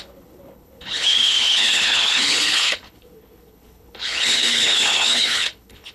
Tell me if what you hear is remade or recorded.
remade